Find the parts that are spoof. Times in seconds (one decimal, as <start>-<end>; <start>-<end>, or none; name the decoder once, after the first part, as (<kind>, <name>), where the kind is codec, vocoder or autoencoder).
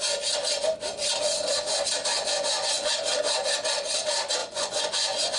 2.1-2.9 (vocoder, Vocos); 4.4-5.4